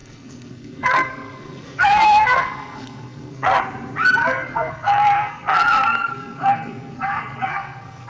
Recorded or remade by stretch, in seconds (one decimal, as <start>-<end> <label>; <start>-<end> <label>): 0.0-3.6 remade; 3.6-4.2 recorded; 4.2-8.1 remade